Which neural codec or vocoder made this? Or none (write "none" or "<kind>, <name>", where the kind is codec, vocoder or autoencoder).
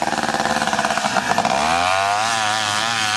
none